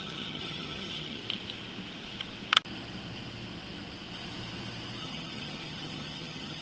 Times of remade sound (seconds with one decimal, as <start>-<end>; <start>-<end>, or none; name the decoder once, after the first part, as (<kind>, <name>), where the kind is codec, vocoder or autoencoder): 0.0-1.2 (vocoder, HiFi-GAN); 5.0-6.6